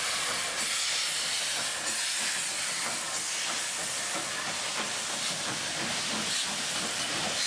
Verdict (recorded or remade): recorded